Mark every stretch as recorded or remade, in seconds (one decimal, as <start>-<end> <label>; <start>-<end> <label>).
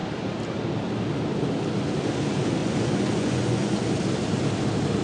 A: 0.0-2.6 recorded; 2.6-3.8 remade; 3.8-5.0 recorded